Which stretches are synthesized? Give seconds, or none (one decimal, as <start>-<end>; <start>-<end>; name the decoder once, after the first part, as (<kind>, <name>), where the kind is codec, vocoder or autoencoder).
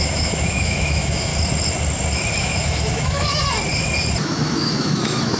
0.0-1.3 (autoencoder, DAC-VAE); 2.4-3.3; 4.2-5.4